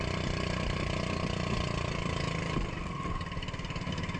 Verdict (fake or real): real